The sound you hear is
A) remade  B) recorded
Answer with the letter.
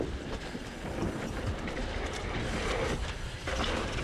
B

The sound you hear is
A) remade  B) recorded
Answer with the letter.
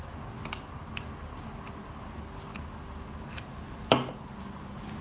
B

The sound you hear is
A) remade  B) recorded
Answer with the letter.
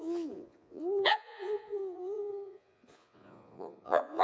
A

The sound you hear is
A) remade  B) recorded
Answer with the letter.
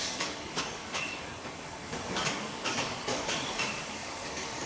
A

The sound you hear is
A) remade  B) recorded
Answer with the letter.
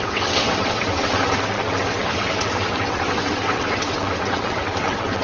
A